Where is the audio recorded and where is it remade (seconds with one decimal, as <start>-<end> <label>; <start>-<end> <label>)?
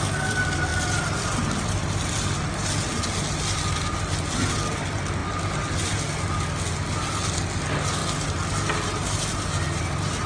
0.0-10.3 recorded